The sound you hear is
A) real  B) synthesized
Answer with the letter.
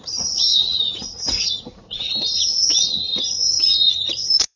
B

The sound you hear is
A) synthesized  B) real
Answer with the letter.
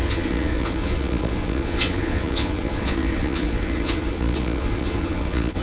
A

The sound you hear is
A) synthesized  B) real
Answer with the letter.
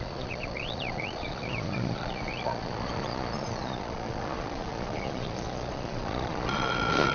A